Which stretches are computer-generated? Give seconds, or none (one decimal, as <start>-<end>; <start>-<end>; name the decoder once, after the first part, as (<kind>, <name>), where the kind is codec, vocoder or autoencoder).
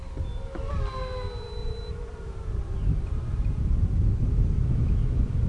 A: 1.6-4.2 (vocoder, BigVGAN v2)